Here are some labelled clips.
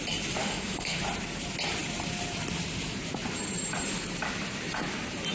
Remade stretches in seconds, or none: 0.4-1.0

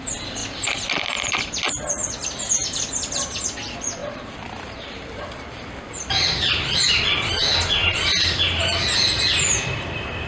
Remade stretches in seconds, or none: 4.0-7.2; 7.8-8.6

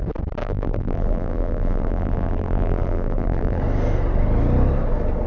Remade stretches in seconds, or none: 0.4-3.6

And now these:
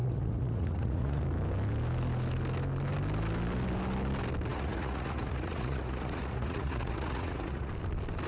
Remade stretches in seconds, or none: 0.0-1.2; 4.5-7.7

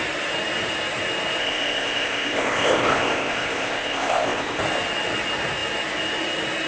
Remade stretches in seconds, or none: 1.4-4.6